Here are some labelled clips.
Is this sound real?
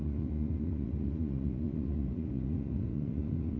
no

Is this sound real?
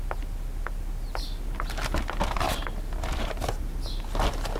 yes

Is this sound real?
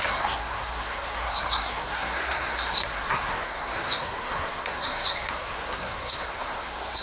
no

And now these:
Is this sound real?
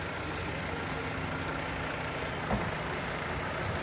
yes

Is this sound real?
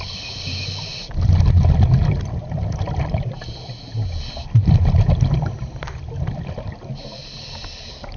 yes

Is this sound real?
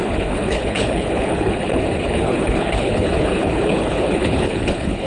no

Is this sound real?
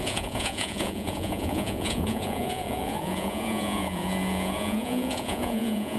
no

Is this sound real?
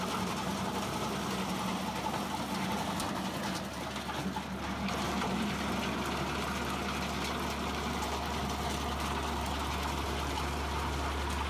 yes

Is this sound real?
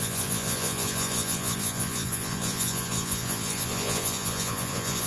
no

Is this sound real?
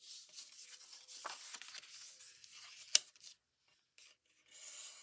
yes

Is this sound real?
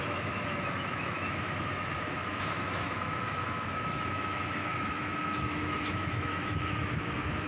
no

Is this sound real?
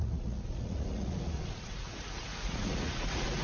no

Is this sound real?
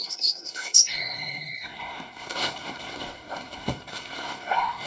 no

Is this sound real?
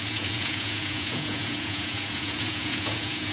no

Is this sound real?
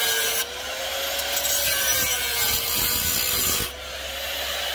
yes